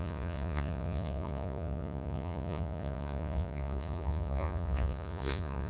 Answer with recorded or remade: remade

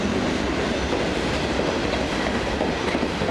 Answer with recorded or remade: recorded